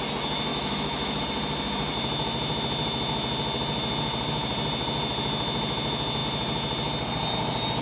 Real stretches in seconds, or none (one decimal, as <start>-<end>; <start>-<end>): 0.0-0.5; 1.2-7.8